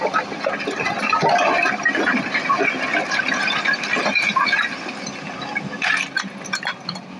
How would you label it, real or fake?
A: real